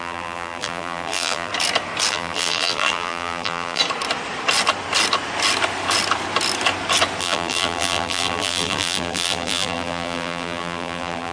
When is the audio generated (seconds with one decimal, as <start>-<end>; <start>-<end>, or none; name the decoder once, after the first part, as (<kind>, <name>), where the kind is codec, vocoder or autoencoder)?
0.0-1.5 (vocoder, BigVGAN v2); 2.1-3.8; 7.2-11.3